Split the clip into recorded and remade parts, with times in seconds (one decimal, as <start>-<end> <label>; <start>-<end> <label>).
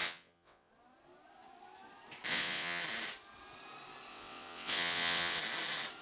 0.0-0.7 remade; 0.7-2.3 recorded; 2.3-2.8 remade; 2.8-4.1 recorded; 4.1-5.4 remade; 5.4-6.0 recorded